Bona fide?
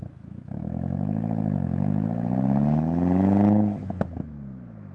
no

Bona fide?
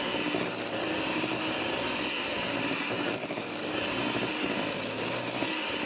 yes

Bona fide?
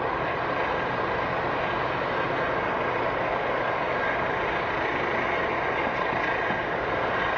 yes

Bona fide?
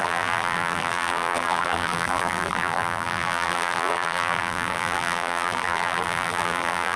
no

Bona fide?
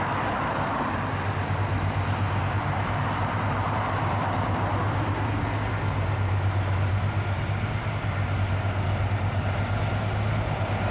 yes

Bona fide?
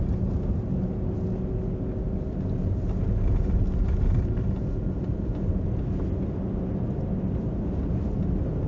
yes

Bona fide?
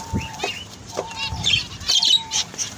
no